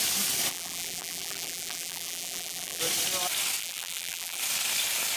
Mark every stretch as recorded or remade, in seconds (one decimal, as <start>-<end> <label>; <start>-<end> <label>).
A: 0.0-0.5 recorded; 0.5-2.8 remade; 2.8-3.6 recorded; 3.6-4.4 remade; 4.4-5.2 recorded